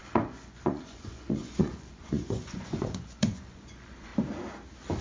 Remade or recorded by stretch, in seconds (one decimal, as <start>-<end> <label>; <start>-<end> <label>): 0.0-4.1 remade; 4.1-5.0 recorded